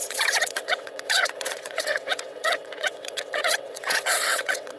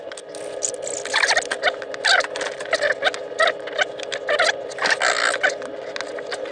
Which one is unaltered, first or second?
second